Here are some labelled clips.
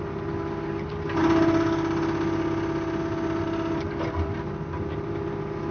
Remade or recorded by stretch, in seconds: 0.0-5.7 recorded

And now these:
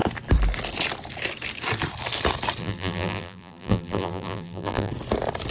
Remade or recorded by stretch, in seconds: 0.0-2.6 recorded; 2.6-4.9 remade; 4.9-5.5 recorded

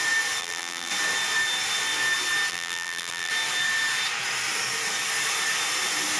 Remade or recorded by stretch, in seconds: 0.0-0.4 recorded; 0.4-0.9 remade; 0.9-2.5 recorded; 2.5-3.3 remade; 3.3-6.2 recorded

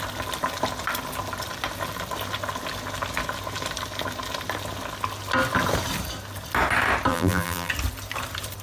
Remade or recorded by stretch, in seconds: 0.0-7.1 recorded; 7.1-7.7 remade; 7.7-8.6 recorded